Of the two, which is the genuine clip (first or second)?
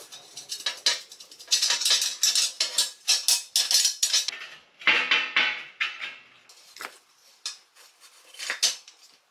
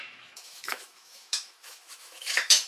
first